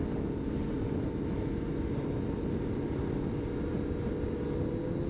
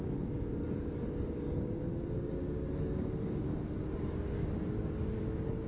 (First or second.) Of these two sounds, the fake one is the second